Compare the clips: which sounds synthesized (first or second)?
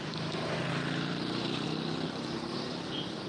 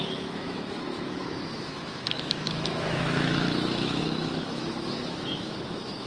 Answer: second